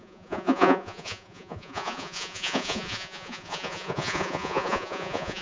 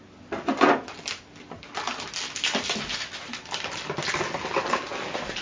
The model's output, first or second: first